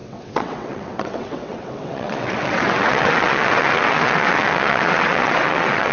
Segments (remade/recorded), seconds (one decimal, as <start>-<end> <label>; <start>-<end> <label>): 0.0-5.9 remade